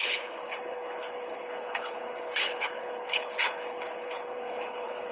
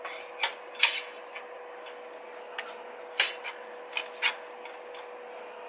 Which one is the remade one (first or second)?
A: first